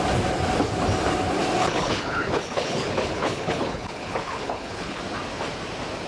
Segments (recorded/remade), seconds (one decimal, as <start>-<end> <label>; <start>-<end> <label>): 0.0-1.6 recorded; 1.6-5.0 remade; 5.0-6.1 recorded